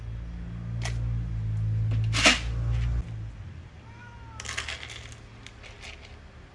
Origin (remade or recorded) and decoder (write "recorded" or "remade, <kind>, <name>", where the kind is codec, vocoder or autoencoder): recorded